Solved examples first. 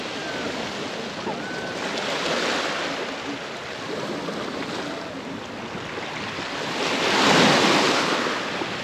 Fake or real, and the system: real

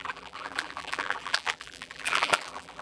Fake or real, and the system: fake, vocoder, BigVGAN v2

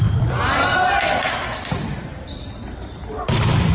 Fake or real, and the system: fake, vocoder, BigVGAN v2